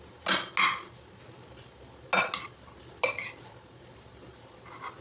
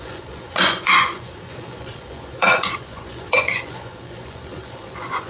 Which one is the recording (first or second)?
first